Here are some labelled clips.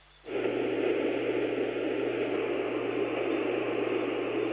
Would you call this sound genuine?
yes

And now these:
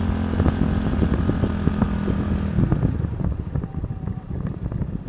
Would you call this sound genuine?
yes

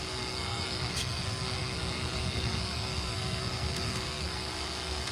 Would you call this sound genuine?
no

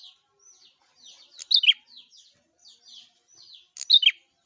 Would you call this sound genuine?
yes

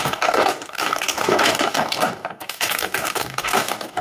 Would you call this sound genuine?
no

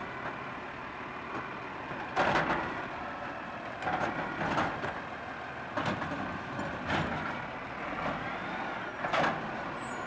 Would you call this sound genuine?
yes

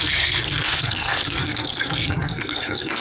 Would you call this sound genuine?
no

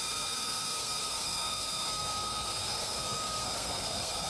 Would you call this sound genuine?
no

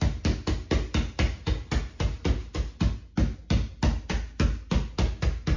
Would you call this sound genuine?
yes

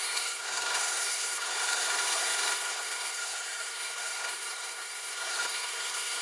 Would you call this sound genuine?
no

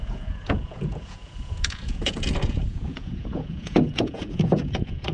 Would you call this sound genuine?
no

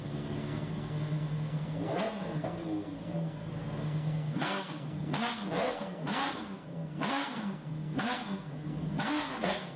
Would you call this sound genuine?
no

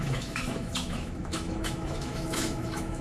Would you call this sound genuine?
no